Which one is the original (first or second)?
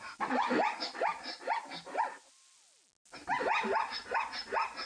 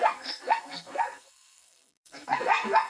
first